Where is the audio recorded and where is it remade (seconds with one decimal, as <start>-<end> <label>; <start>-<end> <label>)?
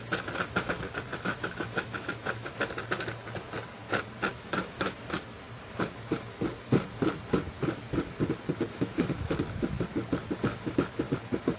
0.0-1.1 recorded; 1.1-2.5 remade; 2.5-4.3 recorded; 4.3-5.0 remade; 5.0-8.7 recorded; 8.7-9.3 remade; 9.3-10.5 recorded; 10.5-11.0 remade; 11.0-11.6 recorded